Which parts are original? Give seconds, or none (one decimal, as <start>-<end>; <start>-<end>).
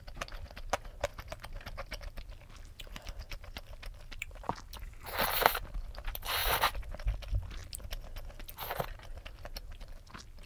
0.0-1.1; 4.4-6.4; 7.0-10.5